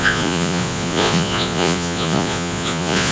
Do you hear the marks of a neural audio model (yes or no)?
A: yes